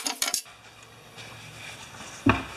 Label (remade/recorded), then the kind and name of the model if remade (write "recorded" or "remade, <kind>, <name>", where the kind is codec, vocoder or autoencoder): remade, vocoder, BigVGAN v2